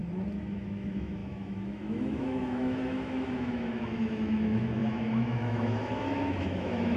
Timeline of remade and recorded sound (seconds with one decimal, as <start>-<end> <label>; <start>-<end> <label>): 0.0-0.6 recorded; 0.6-7.0 remade